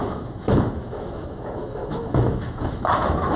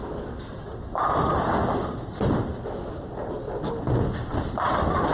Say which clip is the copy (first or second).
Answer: first